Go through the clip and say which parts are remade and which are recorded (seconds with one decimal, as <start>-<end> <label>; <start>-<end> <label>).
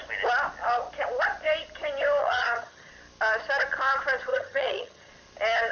0.0-2.2 recorded; 2.2-2.9 remade; 2.9-4.3 recorded; 4.3-5.1 remade; 5.1-5.7 recorded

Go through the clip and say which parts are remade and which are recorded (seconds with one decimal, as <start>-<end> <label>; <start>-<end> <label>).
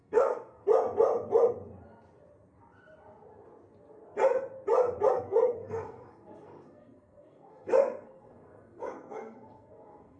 0.0-0.6 remade; 0.6-5.1 recorded; 5.1-10.2 remade